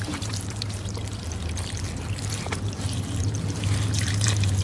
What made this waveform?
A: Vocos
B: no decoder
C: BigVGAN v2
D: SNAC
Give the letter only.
C